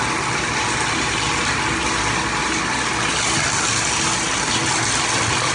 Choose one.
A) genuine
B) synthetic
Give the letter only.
A